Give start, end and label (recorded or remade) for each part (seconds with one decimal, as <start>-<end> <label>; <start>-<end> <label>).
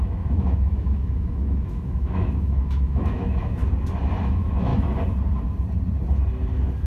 0.0-3.6 remade; 3.6-4.2 recorded; 4.2-4.7 remade; 4.7-6.9 recorded